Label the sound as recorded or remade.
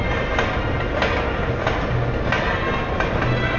recorded